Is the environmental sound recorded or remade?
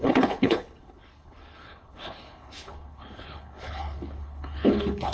remade